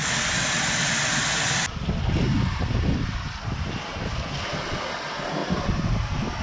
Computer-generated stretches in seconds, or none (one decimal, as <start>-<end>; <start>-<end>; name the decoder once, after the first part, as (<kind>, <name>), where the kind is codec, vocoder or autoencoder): none